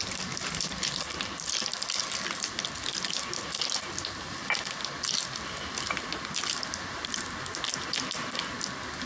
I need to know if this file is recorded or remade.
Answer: recorded